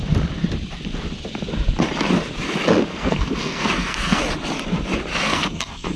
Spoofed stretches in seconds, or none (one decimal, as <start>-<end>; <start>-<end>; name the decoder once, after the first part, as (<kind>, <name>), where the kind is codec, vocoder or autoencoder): 2.9-4.2 (codec, SNAC); 5.1-6.0